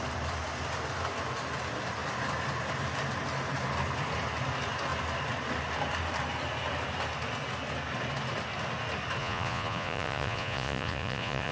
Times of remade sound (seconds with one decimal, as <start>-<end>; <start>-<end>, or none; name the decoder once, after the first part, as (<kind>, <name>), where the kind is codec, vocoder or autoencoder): 9.2-11.5 (vocoder, Vocos)